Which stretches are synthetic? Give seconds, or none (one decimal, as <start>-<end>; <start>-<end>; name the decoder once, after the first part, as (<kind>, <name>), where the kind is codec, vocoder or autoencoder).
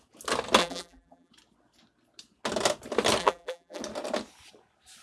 0.6-1.3 (vocoder, BigVGAN v2); 3.2-3.8